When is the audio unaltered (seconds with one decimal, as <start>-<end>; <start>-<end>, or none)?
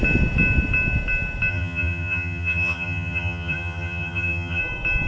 0.0-1.5; 4.6-5.1